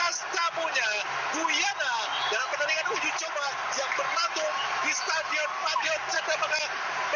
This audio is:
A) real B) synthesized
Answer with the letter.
A